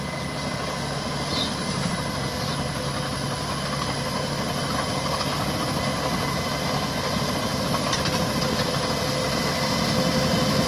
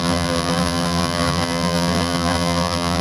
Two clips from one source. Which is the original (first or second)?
first